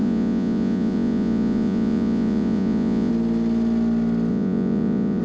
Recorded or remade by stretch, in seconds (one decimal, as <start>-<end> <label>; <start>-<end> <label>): 0.0-3.1 remade; 3.1-4.3 recorded; 4.3-5.2 remade